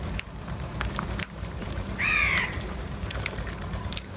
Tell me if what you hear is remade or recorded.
remade